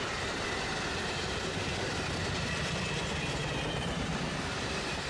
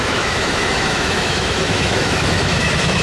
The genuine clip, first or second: first